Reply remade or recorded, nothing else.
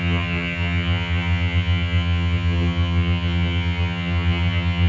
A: remade